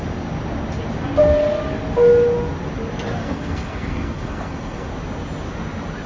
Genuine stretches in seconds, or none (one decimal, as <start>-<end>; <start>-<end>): 0.0-3.2; 4.9-6.1